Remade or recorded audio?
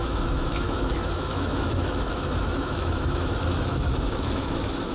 remade